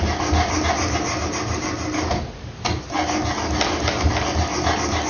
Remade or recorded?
recorded